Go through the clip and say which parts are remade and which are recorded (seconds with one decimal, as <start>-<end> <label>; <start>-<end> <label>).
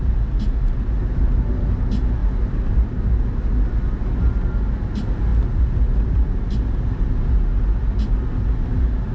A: 0.0-2.2 recorded; 2.2-3.0 remade; 3.0-9.1 recorded